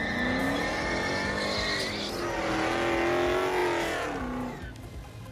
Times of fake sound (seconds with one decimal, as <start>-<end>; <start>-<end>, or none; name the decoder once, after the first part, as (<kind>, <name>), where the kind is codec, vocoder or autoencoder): none

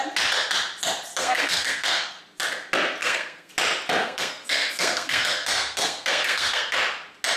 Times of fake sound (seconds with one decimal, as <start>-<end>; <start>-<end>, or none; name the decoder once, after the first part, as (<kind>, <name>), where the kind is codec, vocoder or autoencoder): 1.2-2.2 (codec, SNAC); 3.0-3.5; 4.0-6.8

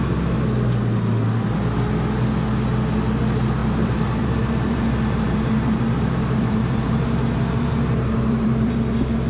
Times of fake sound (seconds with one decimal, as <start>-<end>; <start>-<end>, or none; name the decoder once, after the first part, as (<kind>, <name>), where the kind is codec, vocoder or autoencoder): 3.6-8.7 (vocoder, BigVGAN v2)